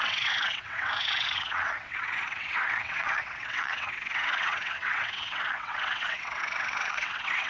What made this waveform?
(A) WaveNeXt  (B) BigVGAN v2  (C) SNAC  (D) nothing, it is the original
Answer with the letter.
A